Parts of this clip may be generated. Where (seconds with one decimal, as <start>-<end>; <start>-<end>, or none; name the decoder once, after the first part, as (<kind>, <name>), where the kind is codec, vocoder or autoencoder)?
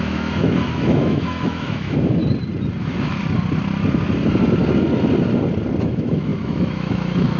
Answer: 0.0-2.2 (autoencoder, DAC-VAE); 2.8-3.2; 5.8-7.4